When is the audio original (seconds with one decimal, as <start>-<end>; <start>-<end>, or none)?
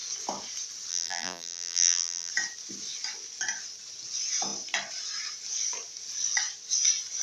0.0-0.9; 2.3-7.2